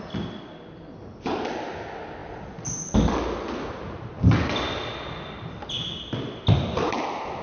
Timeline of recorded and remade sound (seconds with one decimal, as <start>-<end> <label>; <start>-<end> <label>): 0.0-7.4 recorded